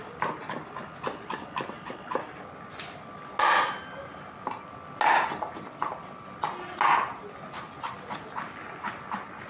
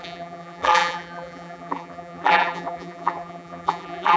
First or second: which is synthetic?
second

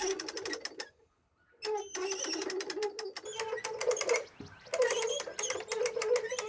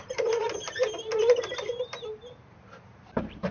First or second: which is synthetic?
second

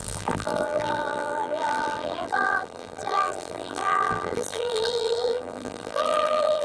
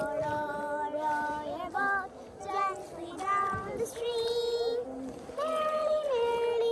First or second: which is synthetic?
first